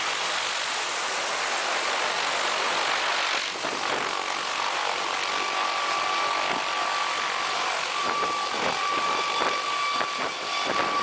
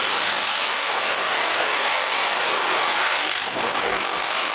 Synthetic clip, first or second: second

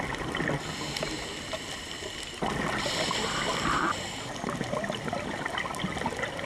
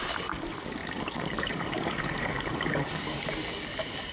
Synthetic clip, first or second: second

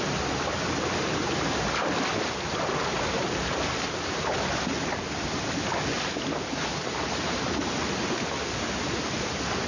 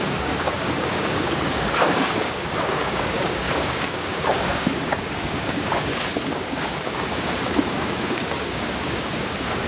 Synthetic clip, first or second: second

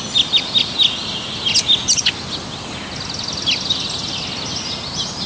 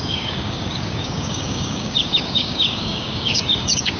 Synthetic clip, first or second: second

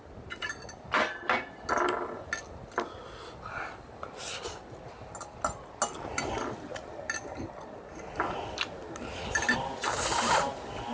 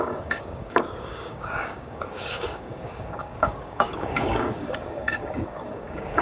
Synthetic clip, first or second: second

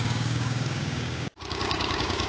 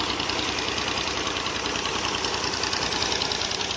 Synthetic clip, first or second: first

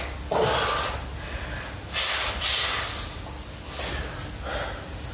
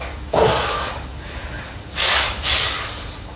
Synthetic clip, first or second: second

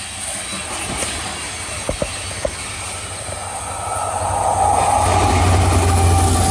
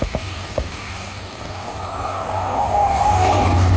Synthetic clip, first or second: second